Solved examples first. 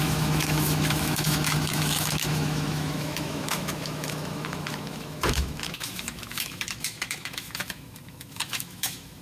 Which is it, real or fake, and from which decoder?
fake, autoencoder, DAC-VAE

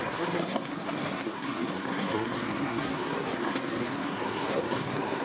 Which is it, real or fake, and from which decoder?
fake, codec, SNAC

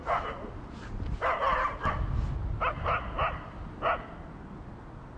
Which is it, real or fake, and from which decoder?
real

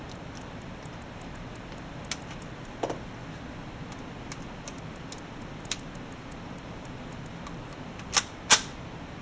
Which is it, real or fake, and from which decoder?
real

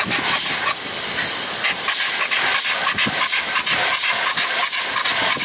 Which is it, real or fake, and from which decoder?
real